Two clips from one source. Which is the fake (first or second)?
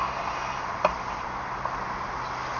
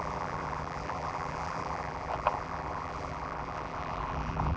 second